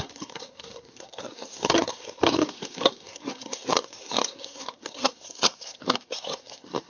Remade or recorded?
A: remade